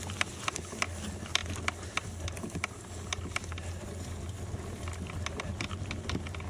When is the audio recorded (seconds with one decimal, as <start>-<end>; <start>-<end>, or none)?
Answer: 0.0-6.5